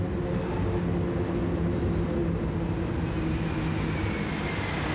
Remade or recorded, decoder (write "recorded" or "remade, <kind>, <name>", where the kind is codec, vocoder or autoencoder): recorded